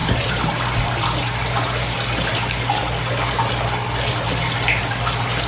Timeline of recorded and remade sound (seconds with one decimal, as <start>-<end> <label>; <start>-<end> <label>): 0.0-5.5 recorded